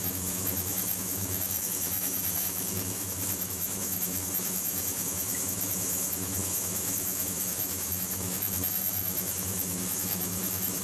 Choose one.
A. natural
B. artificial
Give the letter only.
B